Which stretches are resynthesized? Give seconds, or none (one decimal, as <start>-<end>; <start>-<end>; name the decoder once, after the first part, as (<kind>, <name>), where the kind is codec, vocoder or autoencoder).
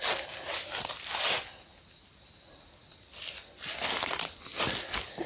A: none